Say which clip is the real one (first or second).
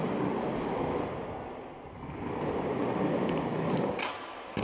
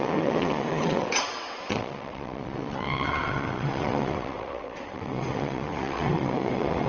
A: first